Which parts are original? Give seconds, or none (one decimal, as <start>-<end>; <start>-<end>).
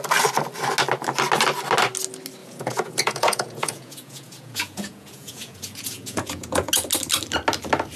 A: 0.0-2.4; 6.7-8.0